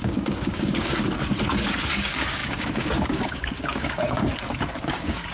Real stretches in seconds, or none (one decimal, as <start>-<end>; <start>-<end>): 1.0-1.7; 4.3-4.8